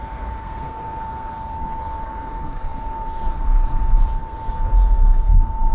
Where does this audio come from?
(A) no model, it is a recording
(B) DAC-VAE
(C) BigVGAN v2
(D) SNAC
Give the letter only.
D